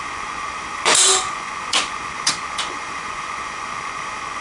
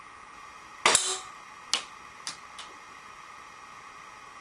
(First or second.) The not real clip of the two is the first